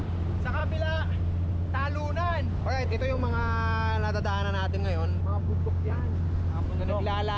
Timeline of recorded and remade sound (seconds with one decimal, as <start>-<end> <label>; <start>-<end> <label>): 0.0-5.4 recorded; 5.4-6.0 remade; 6.0-7.4 recorded